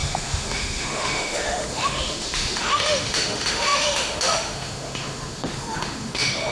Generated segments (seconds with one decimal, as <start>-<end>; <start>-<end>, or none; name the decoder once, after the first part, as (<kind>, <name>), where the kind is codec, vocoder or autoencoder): 0.0-6.5 (autoencoder, DAC-VAE)